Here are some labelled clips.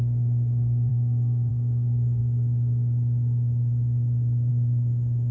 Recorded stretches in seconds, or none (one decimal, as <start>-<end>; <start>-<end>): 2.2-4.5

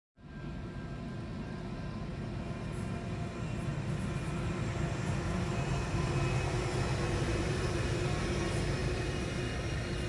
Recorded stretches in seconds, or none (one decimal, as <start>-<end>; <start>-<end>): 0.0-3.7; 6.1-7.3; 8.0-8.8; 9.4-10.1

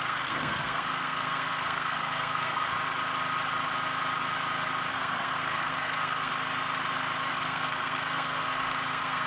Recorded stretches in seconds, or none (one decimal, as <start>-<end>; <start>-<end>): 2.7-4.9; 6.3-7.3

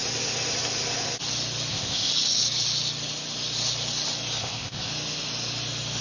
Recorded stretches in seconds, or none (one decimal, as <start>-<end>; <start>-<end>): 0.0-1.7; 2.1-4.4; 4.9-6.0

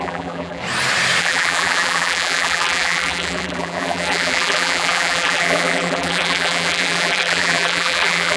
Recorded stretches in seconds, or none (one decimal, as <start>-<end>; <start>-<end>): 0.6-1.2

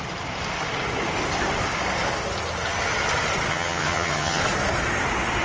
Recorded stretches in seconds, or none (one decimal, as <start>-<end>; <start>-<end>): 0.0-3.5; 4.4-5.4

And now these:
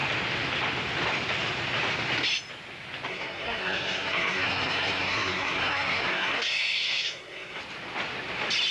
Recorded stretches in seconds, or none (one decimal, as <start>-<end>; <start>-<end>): 0.0-3.1; 7.6-8.7